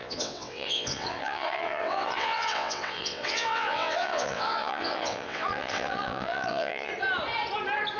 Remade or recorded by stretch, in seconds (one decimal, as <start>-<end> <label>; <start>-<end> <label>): 0.0-6.9 remade; 6.9-8.0 recorded